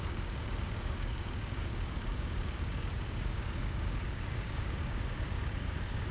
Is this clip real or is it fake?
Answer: fake